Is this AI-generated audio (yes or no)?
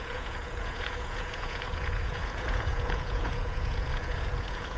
yes